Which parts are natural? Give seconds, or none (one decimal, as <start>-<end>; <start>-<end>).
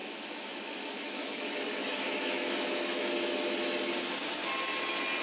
3.1-5.2